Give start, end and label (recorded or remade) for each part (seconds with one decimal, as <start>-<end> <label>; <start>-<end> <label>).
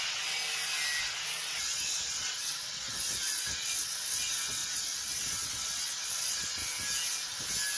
0.0-0.4 remade; 0.4-1.0 recorded; 1.0-6.6 remade; 6.6-7.8 recorded